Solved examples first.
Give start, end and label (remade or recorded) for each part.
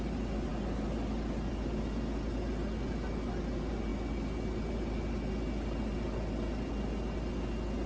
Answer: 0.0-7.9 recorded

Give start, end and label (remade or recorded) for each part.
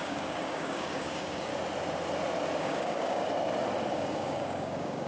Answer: 0.0-1.5 remade; 1.5-2.6 recorded; 2.6-3.2 remade; 3.2-3.9 recorded; 3.9-5.1 remade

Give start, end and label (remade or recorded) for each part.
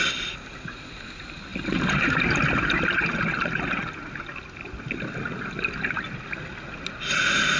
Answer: 0.0-7.6 recorded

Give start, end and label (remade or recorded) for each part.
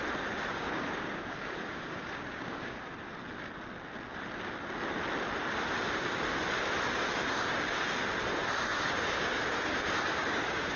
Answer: 0.0-0.5 recorded; 0.5-3.1 remade; 3.1-8.7 recorded; 8.7-10.8 remade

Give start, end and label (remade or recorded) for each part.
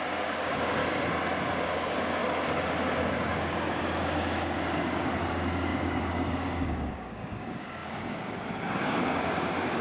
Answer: 0.0-0.8 remade; 0.8-1.6 recorded; 1.6-2.2 remade; 2.2-3.1 recorded; 3.1-9.8 remade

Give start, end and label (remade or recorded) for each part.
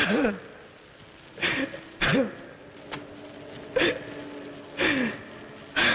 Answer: 0.0-5.9 recorded